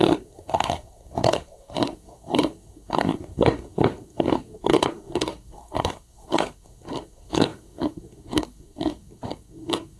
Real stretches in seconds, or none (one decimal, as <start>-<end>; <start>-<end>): none